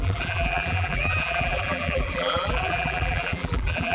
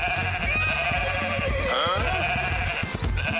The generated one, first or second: first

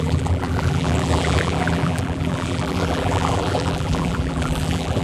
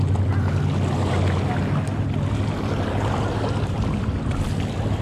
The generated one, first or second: first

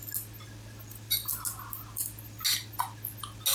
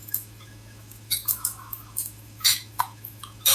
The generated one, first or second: second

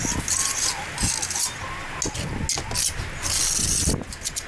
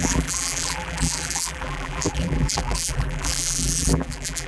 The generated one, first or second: second